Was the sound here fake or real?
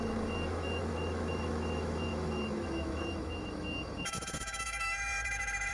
fake